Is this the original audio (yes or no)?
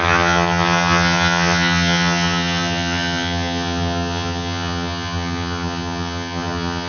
no